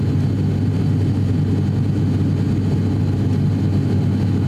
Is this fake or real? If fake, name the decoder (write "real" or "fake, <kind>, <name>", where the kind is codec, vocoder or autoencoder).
real